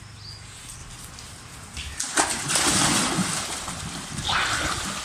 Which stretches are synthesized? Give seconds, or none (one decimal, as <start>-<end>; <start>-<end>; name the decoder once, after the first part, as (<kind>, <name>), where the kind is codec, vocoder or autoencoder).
none